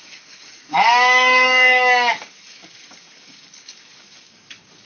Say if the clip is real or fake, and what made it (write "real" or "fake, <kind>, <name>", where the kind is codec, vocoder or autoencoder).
fake, codec, DAC